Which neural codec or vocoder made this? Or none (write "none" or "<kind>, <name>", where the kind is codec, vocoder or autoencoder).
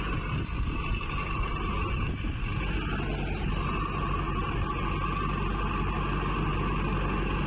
none